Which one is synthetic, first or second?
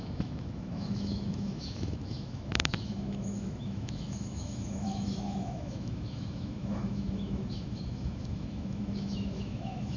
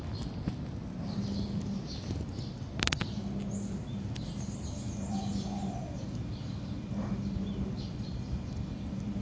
first